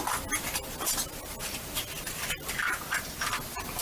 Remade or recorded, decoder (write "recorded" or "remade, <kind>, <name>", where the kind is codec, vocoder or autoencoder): recorded